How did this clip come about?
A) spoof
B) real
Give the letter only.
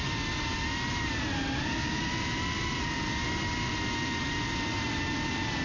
B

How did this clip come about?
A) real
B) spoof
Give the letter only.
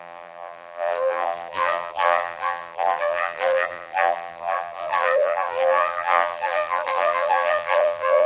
B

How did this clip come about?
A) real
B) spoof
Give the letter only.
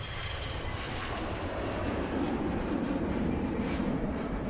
B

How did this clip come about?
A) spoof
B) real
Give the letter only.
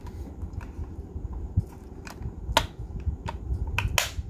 B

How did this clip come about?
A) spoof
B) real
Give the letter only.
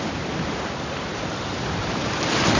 A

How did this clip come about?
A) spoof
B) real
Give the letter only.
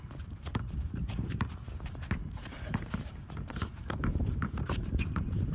A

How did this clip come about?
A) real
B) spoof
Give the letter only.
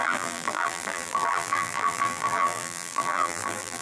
B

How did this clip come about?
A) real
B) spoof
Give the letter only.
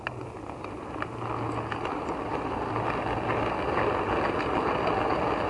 A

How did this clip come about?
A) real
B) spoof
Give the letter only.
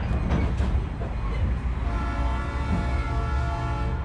A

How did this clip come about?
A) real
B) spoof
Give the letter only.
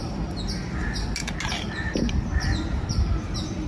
A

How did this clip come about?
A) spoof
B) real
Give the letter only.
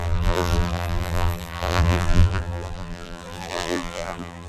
A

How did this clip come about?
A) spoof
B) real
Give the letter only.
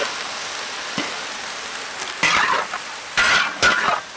B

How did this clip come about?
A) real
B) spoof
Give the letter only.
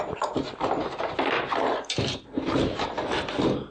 A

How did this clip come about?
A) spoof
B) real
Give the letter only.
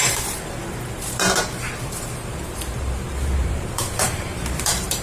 A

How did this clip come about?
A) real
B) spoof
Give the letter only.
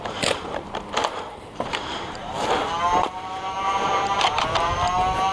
B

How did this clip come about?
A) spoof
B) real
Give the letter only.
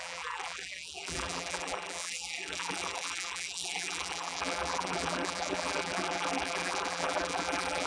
A